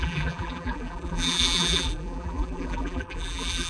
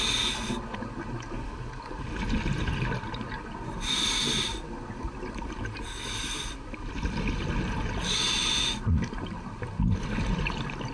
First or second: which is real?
second